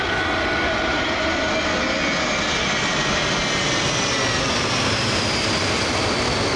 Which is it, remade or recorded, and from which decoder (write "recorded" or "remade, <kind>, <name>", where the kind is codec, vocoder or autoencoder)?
recorded